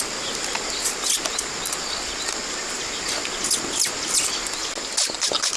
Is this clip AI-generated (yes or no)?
no